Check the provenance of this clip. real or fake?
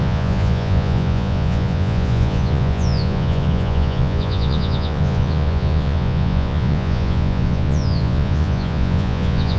fake